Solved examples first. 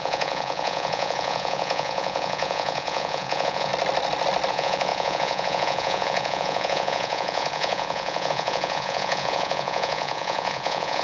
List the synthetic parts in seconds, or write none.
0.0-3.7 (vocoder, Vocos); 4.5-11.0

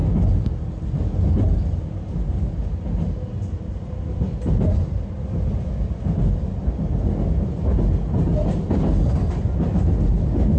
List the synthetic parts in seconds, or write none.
none

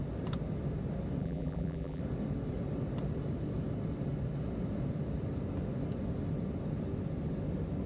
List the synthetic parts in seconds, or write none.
1.2-2.0 (vocoder, BigVGAN v2)

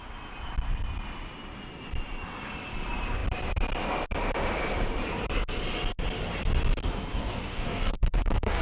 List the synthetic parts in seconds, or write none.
7.2-8.6 (codec, DAC)